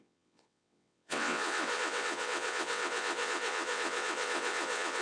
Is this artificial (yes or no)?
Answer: yes